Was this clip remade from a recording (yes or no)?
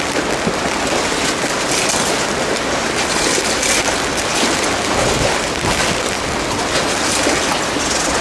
no